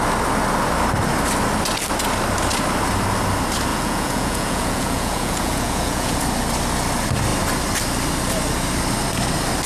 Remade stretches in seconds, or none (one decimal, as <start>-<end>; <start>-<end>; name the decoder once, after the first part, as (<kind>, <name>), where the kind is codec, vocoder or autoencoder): 3.7-6.2 (vocoder, Vocos)